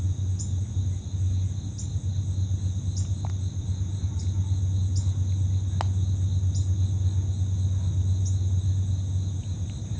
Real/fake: real